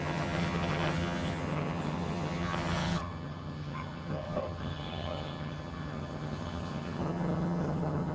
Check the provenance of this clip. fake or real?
fake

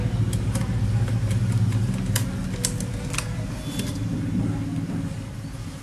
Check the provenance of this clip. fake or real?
real